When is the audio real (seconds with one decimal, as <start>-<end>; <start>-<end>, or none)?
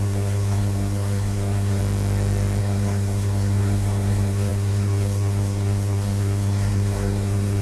1.8-2.6